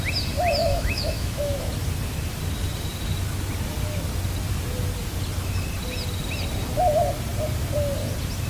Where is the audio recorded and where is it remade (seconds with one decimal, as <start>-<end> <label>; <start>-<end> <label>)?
0.0-0.6 recorded; 0.6-1.7 remade; 1.7-8.5 recorded